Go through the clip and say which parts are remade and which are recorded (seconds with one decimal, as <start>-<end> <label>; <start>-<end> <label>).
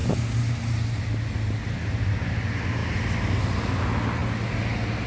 0.0-5.1 recorded